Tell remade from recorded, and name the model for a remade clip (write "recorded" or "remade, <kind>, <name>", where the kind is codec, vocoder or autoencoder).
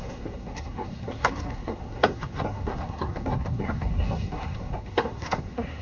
remade, codec, SNAC